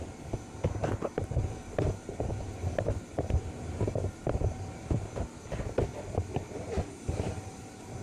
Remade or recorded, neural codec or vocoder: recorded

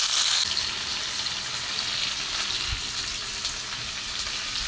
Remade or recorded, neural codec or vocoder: recorded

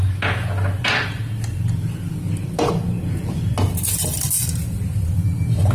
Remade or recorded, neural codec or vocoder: recorded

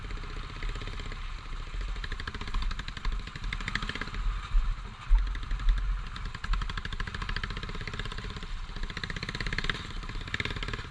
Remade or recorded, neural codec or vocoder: recorded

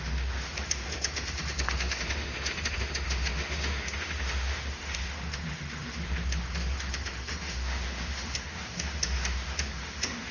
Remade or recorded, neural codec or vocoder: remade, autoencoder, DAC-VAE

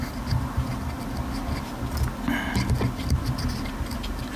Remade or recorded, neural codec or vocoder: recorded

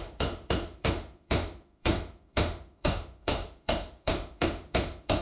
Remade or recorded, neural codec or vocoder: remade, autoencoder, DAC-VAE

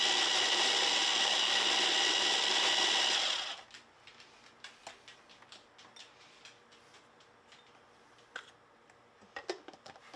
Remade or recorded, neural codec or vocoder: recorded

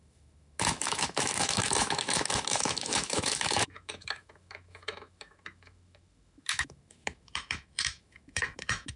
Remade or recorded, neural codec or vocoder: remade, autoencoder, DAC-VAE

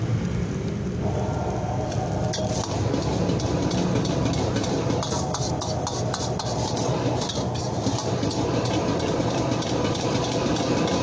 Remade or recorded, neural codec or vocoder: recorded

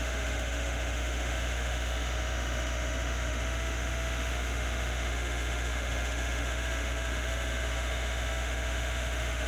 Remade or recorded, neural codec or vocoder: remade, autoencoder, DAC-VAE